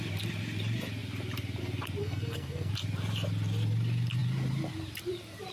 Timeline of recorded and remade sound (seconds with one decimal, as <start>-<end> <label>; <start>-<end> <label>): 0.0-2.0 recorded; 2.0-2.7 remade; 2.7-5.5 recorded